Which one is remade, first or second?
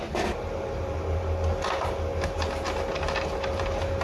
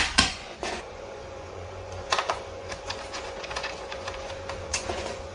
second